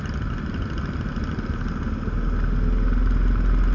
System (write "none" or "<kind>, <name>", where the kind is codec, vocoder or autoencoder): none